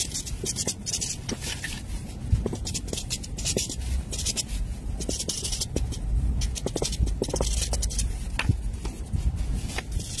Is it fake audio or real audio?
real